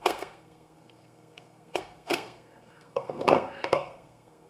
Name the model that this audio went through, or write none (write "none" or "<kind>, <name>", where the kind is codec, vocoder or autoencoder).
codec, SNAC